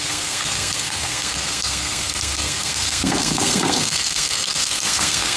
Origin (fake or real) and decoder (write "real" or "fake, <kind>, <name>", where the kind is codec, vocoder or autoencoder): fake, codec, SNAC